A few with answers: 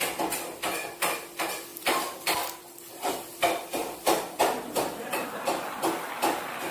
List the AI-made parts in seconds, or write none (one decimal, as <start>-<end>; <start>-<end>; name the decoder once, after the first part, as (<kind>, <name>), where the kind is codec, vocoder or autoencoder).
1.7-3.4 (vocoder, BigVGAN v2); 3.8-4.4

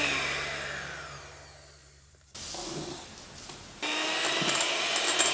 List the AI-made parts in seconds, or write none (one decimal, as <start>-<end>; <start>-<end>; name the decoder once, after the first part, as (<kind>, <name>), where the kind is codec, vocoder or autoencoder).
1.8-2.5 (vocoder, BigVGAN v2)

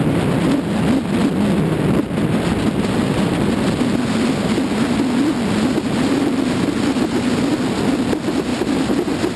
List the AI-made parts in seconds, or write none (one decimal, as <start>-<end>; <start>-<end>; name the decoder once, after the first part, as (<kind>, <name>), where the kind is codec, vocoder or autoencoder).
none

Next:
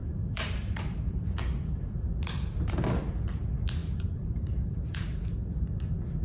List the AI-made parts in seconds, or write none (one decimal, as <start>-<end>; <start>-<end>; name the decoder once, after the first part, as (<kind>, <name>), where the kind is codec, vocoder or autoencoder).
0.0-1.4 (vocoder, BigVGAN v2); 3.8-5.1